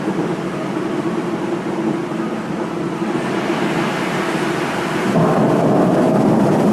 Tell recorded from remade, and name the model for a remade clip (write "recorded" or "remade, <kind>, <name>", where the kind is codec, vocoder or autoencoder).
recorded